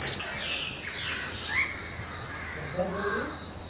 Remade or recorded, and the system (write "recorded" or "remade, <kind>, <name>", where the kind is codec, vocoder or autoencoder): recorded